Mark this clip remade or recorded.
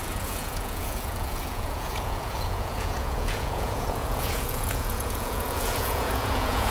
remade